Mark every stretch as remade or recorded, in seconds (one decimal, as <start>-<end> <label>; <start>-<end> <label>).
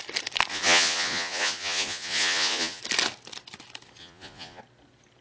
0.0-0.5 recorded; 0.5-2.8 remade; 2.8-4.0 recorded; 4.0-4.6 remade; 4.6-5.2 recorded